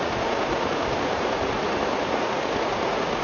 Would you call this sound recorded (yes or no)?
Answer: no